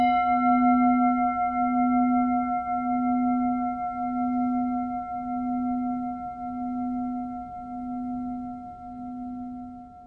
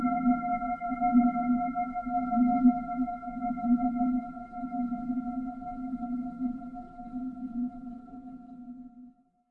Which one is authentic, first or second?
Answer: first